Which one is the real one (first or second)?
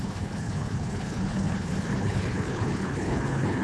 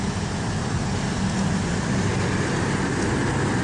second